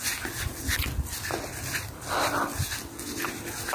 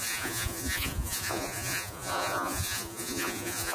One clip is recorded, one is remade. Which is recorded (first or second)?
first